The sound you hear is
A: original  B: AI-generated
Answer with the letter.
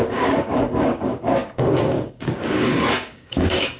B